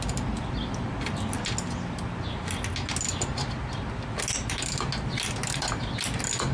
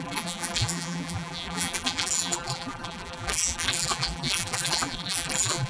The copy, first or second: second